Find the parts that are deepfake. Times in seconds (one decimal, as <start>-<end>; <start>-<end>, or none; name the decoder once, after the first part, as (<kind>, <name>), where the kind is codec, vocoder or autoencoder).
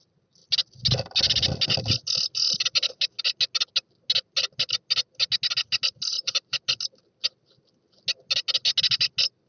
6.1-6.6 (vocoder, BigVGAN v2)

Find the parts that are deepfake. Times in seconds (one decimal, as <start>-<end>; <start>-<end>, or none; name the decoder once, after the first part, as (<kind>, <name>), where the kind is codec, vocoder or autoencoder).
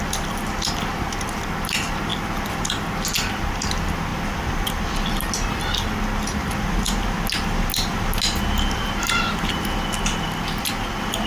none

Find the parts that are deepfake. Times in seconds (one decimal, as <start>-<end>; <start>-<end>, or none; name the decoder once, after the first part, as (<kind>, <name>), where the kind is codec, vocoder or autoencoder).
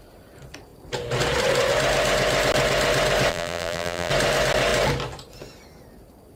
3.3-4.1 (vocoder, BigVGAN v2)